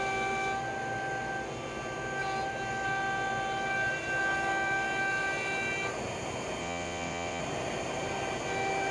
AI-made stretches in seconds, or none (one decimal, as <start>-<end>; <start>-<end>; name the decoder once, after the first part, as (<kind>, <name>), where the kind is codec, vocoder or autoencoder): 6.6-7.4 (vocoder, WaveNeXt)